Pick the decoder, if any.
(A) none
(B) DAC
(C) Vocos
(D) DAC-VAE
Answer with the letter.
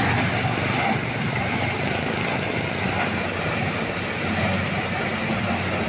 A